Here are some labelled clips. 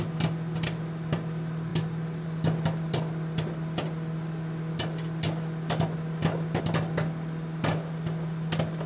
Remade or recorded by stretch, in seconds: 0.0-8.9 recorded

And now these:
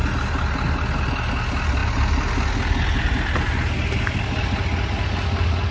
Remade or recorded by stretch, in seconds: 0.0-5.7 recorded

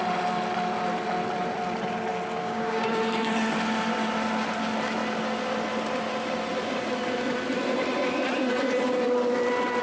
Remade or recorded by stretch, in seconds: 0.0-2.4 recorded; 2.4-3.0 remade; 3.0-9.8 recorded

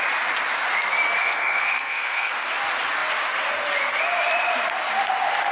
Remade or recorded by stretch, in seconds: 0.0-1.2 recorded; 1.2-2.3 remade; 2.3-5.5 recorded

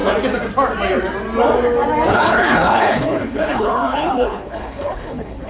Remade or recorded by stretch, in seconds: 0.0-2.1 recorded; 2.1-5.5 remade

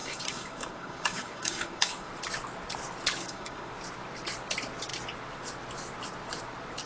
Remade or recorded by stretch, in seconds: 0.0-2.1 remade; 2.1-3.2 recorded; 3.2-3.7 remade; 3.7-6.9 recorded

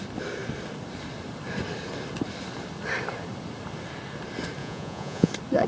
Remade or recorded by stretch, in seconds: 0.0-4.6 recorded; 4.6-5.3 remade; 5.3-5.7 recorded

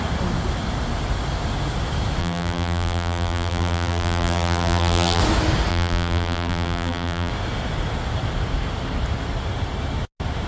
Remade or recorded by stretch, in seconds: 0.0-2.2 recorded; 2.2-5.2 remade; 5.2-5.7 recorded; 5.7-7.3 remade; 7.3-10.5 recorded